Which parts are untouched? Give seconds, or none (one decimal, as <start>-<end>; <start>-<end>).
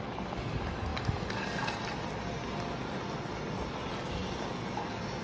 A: 0.0-5.2